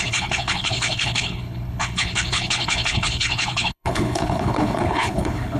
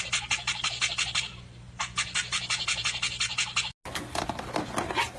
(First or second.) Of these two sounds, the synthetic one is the first